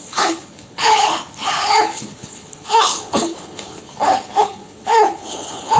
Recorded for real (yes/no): no